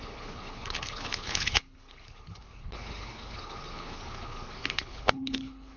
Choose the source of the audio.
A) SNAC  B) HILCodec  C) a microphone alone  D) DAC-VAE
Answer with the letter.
B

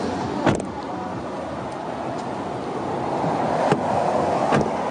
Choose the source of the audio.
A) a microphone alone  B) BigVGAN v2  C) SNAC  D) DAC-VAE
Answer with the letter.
A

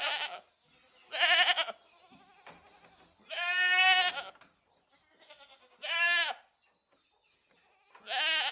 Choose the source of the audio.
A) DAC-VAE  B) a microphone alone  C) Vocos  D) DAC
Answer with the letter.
B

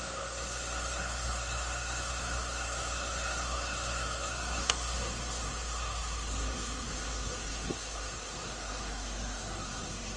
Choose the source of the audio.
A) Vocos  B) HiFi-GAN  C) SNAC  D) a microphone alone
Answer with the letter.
C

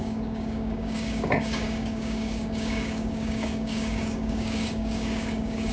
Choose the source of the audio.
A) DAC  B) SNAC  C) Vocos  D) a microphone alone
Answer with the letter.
A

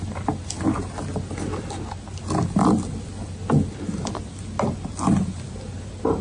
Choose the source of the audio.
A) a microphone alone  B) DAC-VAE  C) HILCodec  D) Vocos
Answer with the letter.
A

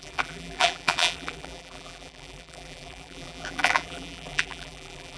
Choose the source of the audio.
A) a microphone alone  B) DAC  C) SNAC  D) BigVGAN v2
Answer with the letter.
D